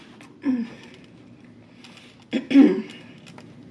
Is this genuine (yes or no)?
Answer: yes